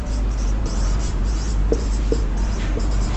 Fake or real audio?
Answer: fake